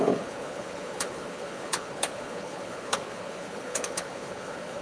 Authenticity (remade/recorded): remade